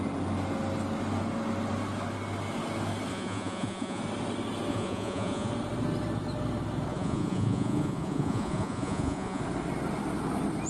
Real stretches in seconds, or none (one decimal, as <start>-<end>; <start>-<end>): 0.0-3.1; 4.0-4.7; 5.5-6.9; 9.4-10.7